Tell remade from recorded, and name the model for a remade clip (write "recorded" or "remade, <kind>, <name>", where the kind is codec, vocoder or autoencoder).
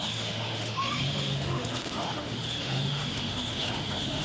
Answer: remade, autoencoder, DAC-VAE